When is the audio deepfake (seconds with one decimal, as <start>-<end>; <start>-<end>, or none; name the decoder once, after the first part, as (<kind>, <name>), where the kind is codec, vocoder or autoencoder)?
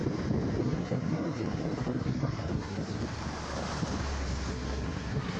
0.6-3.0 (codec, SNAC); 4.5-5.4